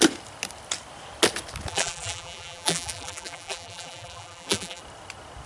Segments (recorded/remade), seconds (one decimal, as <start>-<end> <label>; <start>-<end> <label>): 0.0-1.7 recorded; 1.7-4.8 remade; 4.8-5.5 recorded